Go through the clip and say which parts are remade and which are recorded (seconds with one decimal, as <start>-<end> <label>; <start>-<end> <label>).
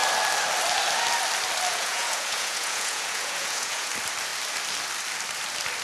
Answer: 0.0-1.7 recorded; 1.7-3.9 remade; 3.9-5.8 recorded